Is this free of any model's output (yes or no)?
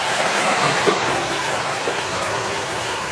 no